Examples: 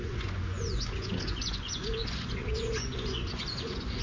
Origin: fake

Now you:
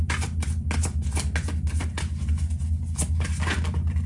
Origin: real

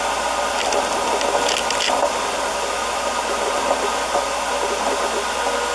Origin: real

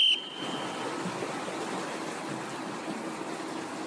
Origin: real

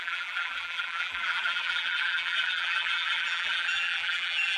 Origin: fake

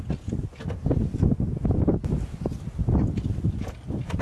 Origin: real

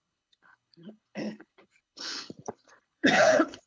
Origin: fake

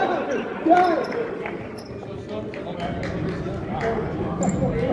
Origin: real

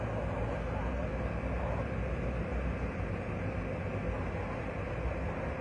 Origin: real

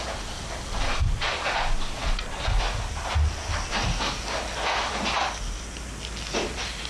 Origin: real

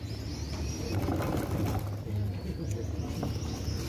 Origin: real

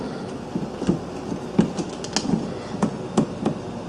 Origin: real